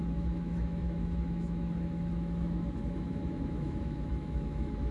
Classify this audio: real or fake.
fake